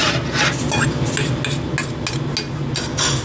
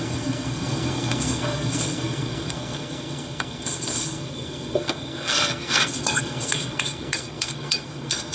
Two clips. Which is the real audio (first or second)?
first